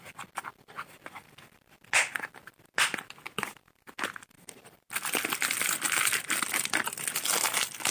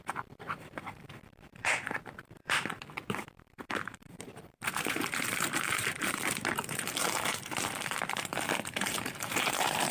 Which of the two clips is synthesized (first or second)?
second